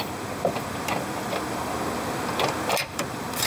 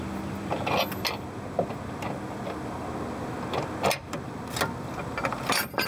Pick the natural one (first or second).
second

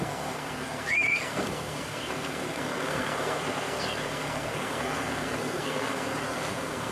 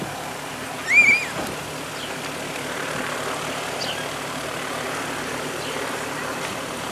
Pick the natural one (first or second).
second